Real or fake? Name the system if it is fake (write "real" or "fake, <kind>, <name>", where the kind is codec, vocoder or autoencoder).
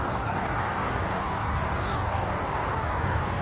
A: fake, codec, DAC